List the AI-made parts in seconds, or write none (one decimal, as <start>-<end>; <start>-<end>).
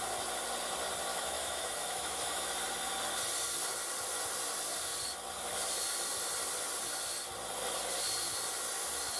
1.1-2.5